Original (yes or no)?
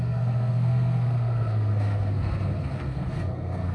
no